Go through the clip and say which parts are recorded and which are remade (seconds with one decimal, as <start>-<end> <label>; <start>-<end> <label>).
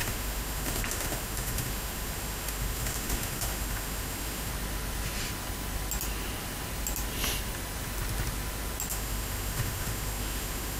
0.0-4.5 remade; 4.5-8.9 recorded; 8.9-10.8 remade